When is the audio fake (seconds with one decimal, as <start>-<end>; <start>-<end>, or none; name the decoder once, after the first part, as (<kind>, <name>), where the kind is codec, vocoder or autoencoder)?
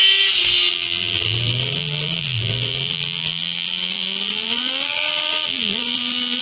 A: 0.7-6.4 (vocoder, BigVGAN v2)